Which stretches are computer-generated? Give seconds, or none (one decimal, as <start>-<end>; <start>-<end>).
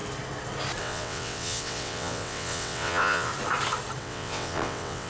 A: 0.8-3.3; 4.0-5.1